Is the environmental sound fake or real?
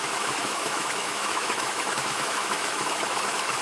fake